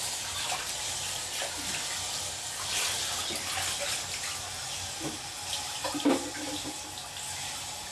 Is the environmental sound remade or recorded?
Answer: recorded